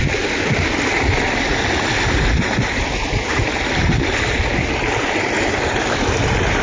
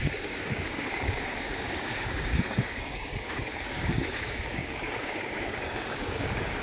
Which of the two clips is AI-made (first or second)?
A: second